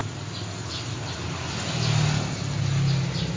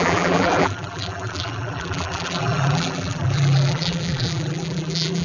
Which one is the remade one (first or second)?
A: second